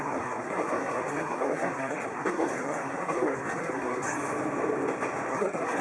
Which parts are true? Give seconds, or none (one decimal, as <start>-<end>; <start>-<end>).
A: 4.2-5.3